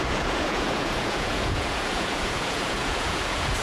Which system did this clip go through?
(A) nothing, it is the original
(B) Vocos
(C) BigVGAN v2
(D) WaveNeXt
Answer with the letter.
B